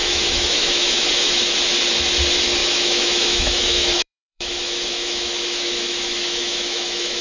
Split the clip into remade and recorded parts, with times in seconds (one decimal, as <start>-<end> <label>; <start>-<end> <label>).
0.0-1.5 remade; 1.5-2.6 recorded; 2.6-7.2 remade

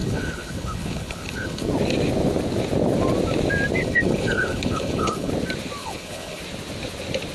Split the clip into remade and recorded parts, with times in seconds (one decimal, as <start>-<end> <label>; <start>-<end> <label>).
0.0-1.7 remade; 1.7-3.8 recorded; 3.8-5.3 remade; 5.3-5.8 recorded; 5.8-6.4 remade; 6.4-7.3 recorded

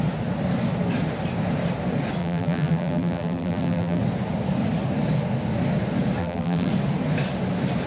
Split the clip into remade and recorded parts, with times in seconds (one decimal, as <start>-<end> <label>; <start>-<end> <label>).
0.0-2.2 recorded; 2.2-4.0 remade; 4.0-6.2 recorded; 6.2-6.7 remade; 6.7-7.9 recorded